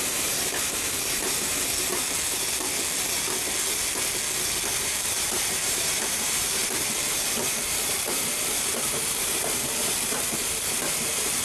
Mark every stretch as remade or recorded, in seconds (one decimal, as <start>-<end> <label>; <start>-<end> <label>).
0.0-1.9 remade; 1.9-4.8 recorded; 4.8-11.4 remade